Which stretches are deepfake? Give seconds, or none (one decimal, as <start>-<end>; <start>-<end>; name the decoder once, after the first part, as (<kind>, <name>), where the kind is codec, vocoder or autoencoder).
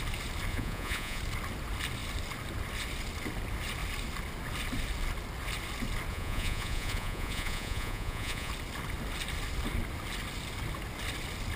0.5-1.2 (vocoder, Vocos); 6.1-8.5